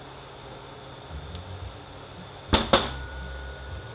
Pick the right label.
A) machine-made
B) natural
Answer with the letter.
B